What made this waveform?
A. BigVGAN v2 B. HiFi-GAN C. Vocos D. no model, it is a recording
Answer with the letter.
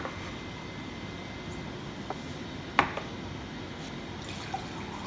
D